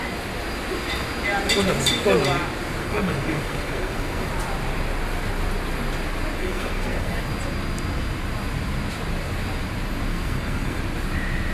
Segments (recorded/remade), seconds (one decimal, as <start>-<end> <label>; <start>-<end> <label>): 0.0-2.8 recorded; 2.8-4.3 remade; 4.3-6.4 recorded; 6.4-7.2 remade; 7.2-10.1 recorded; 10.1-10.8 remade; 10.8-11.5 recorded